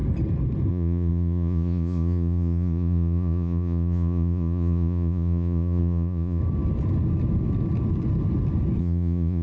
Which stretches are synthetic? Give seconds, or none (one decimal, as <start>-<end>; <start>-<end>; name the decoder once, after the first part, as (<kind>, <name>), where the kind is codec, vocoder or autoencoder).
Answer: 0.7-6.4 (vocoder, Vocos); 8.8-9.4